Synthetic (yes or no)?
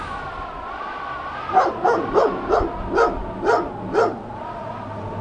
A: no